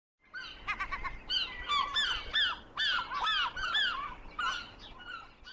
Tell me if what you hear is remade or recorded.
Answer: recorded